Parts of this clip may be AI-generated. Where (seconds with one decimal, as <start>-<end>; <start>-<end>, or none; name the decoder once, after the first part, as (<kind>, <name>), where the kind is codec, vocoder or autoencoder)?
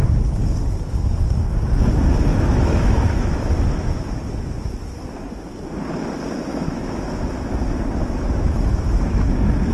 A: 2.3-4.0 (autoencoder, DAC-VAE); 6.5-7.2; 8.0-9.2